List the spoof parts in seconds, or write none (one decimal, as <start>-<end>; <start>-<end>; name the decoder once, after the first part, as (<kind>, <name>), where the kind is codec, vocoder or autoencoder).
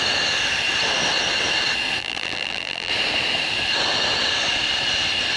2.0-2.9 (vocoder, BigVGAN v2)